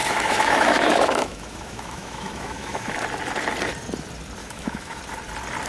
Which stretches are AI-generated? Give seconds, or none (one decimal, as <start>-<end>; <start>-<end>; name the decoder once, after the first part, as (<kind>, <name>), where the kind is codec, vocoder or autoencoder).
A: 0.0-3.0 (autoencoder, DAC-VAE); 4.4-5.0